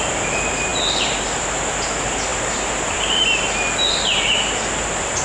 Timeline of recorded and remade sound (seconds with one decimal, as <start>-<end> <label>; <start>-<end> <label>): 0.0-5.2 recorded